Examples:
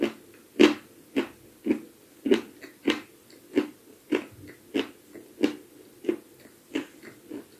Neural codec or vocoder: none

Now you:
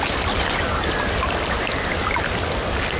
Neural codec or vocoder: none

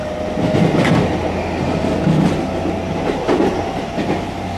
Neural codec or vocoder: none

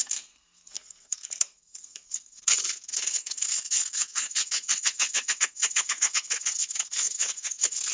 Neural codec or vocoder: codec, SNAC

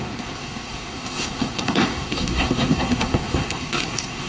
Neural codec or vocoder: codec, SNAC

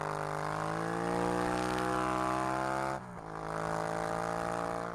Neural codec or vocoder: none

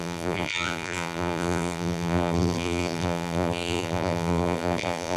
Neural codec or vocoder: vocoder, BigVGAN v2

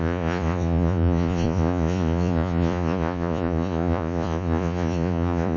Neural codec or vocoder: vocoder, Vocos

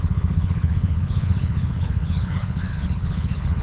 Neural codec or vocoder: codec, HILCodec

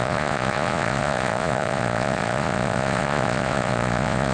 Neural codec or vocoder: vocoder, Vocos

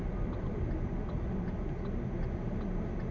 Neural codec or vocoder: none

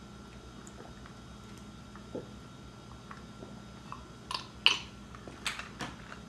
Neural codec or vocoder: none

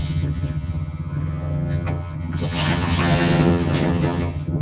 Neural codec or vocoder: vocoder, HiFi-GAN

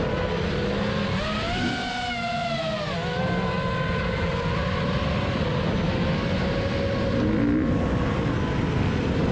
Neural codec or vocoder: none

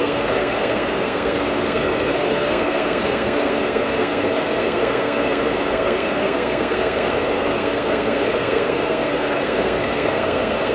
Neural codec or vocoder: codec, SNAC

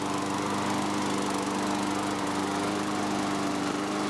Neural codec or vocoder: none